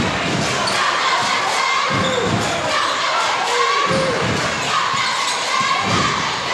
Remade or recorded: recorded